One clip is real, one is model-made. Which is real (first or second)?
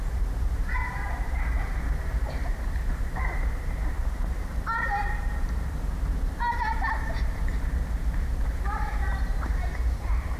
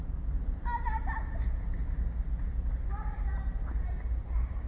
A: second